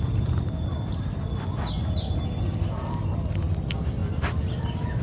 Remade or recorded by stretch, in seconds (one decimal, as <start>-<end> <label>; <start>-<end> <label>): 0.0-5.0 recorded